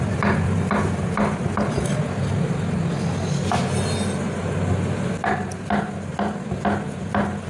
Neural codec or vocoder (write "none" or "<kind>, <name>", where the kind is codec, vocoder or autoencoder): none